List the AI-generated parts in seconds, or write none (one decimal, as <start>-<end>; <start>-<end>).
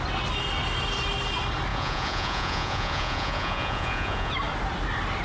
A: 1.7-4.3